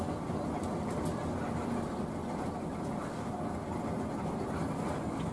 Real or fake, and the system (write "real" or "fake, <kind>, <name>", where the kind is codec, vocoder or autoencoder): real